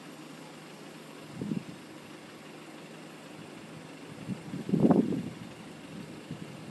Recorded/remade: recorded